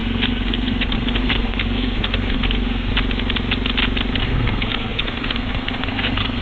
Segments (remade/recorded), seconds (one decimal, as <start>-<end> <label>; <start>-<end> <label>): 0.0-2.9 remade; 2.9-4.2 recorded; 4.2-6.4 remade